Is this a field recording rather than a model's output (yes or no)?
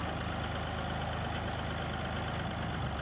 yes